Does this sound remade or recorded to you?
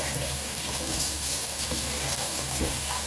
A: remade